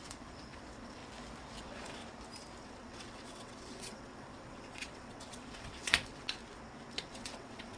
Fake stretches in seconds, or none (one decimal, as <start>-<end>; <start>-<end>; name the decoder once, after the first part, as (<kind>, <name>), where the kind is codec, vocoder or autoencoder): 0.0-1.0 (vocoder, WaveNeXt); 1.6-2.0; 2.6-6.4; 7.0-7.8